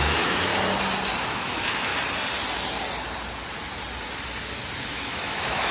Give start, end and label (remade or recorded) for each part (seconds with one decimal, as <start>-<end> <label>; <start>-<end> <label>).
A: 0.0-0.5 remade; 0.5-1.3 recorded; 1.3-1.9 remade; 1.9-4.9 recorded; 4.9-5.7 remade